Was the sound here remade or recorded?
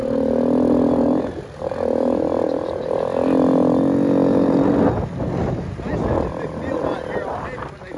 recorded